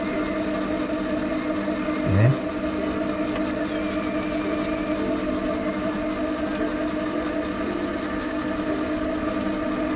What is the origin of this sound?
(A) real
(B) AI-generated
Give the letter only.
A